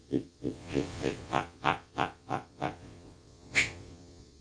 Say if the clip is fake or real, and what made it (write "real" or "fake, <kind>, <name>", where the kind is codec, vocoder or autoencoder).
fake, vocoder, Vocos